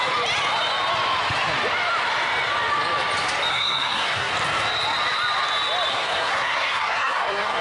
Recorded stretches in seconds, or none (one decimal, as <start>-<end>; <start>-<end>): 0.0-3.5; 4.3-5.9